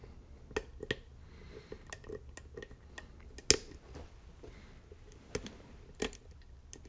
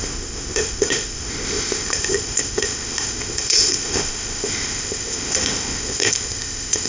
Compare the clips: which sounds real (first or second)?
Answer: first